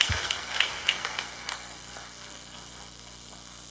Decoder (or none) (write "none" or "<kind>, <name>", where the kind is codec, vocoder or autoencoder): codec, SNAC